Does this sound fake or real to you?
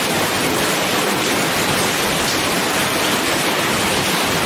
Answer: real